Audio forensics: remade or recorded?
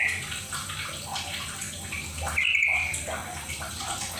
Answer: recorded